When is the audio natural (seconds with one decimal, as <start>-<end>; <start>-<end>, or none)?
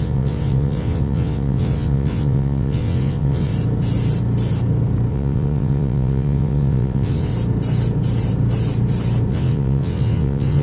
3.5-5.1; 7.3-9.3